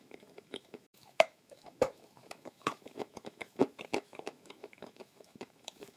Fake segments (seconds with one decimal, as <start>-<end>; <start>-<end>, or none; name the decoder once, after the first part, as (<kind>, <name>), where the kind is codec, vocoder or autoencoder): 0.0-6.0 (autoencoder, DAC-VAE)